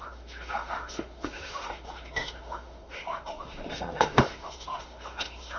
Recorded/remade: remade